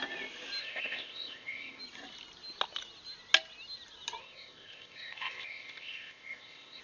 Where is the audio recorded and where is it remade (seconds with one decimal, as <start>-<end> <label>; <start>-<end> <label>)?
0.0-0.6 recorded; 0.6-1.8 remade; 1.8-4.2 recorded; 4.2-6.8 remade